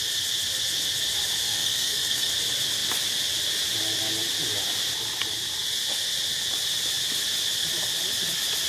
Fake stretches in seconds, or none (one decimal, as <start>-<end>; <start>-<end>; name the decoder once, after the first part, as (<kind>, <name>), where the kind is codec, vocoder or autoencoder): 1.4-2.3 (codec, SNAC)